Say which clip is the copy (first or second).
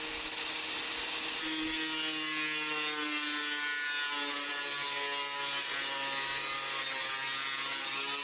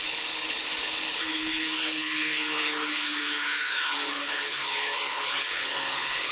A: second